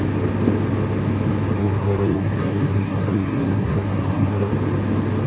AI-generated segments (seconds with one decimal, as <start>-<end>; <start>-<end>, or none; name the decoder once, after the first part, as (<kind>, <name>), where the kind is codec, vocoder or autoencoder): 1.6-4.5 (codec, SNAC)